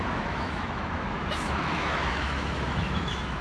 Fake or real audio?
fake